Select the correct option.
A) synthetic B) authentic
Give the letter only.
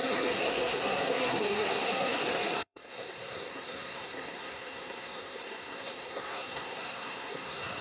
A